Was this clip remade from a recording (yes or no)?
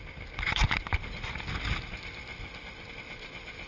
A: no